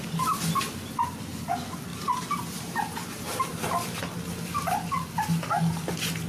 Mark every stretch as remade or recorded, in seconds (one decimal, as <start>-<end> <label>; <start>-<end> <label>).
0.0-1.9 recorded; 1.9-4.0 remade; 4.0-6.3 recorded